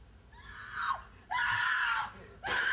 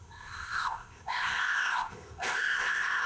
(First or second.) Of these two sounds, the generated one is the second